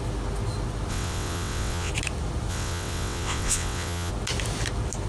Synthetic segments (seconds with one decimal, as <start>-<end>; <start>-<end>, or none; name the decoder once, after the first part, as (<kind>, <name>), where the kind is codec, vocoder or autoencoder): 0.9-1.9 (vocoder, WaveNeXt); 2.5-4.1